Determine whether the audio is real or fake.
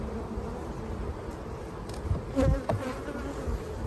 real